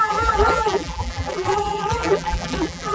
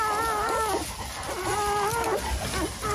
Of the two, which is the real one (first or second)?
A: second